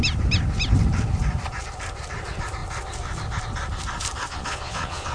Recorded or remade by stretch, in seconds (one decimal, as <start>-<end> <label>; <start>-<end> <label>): 0.0-4.3 recorded; 4.3-5.1 remade